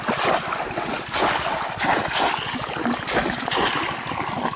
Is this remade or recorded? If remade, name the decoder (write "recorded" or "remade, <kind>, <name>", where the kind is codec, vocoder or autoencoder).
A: recorded